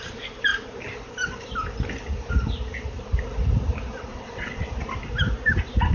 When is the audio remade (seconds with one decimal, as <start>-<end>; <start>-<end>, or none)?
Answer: 4.1-4.7